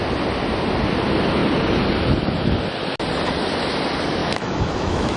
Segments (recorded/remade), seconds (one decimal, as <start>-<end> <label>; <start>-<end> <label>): 0.0-4.2 recorded; 4.2-5.2 remade